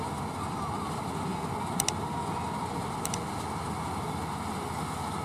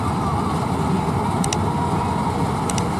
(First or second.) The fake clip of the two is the second